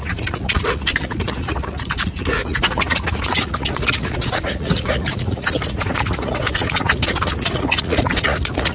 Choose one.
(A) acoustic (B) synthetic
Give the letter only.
B